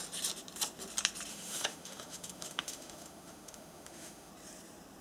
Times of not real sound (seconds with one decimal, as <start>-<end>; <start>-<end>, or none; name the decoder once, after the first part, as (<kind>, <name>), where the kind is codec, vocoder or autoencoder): 1.3-4.3 (autoencoder, DAC-VAE)